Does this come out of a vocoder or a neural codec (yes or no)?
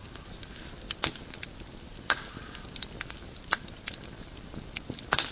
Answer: no